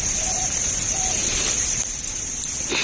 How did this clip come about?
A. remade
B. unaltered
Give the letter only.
B